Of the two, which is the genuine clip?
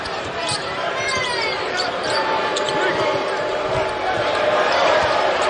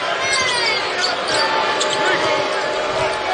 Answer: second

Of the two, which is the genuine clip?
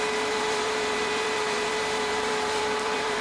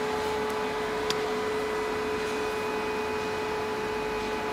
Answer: second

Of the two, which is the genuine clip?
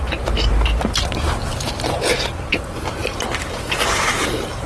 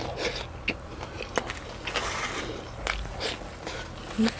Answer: second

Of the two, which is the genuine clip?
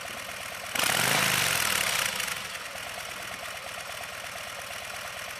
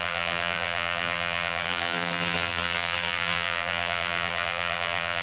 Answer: first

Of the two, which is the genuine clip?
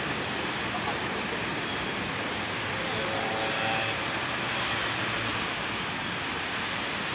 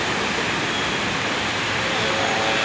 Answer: second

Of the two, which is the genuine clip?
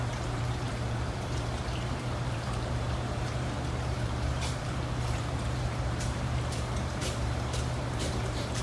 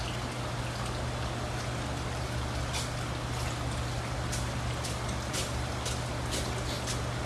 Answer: second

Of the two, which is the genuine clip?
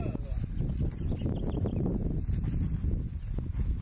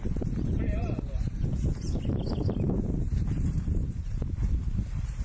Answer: first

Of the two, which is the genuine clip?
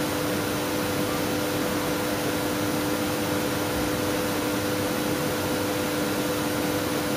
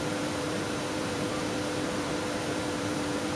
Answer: first